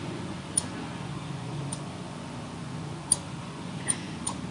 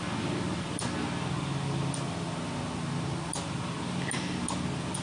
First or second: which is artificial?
first